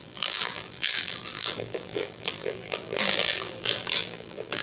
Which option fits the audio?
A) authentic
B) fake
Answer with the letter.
B